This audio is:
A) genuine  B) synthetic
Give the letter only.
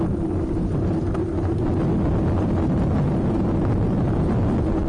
A